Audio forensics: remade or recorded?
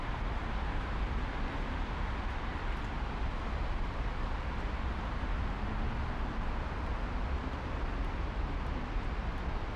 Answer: recorded